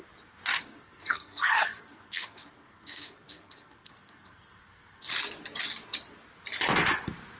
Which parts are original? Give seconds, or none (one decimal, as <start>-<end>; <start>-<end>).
0.0-0.7; 5.1-7.4